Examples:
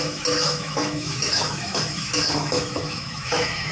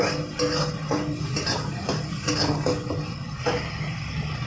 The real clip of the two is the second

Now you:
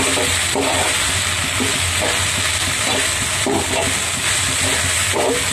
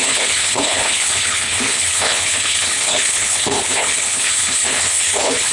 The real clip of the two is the first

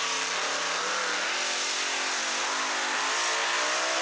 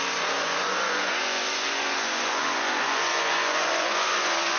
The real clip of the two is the first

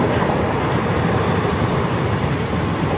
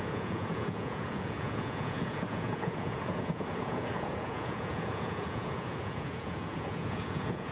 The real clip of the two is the first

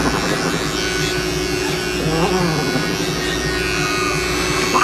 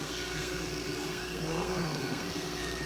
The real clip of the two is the first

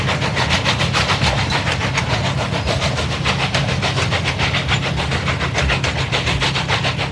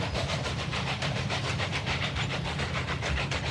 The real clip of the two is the first